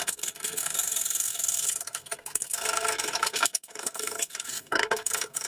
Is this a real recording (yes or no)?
no